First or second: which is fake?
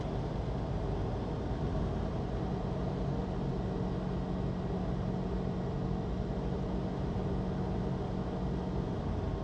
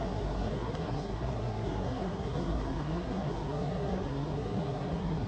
second